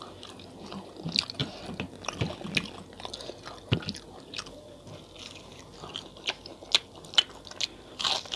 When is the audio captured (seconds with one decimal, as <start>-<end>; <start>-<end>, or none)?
1.4-5.9; 6.5-7.9